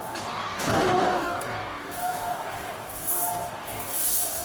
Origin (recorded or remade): remade